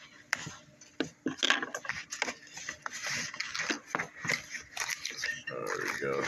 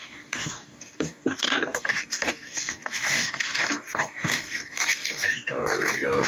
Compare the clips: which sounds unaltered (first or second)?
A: first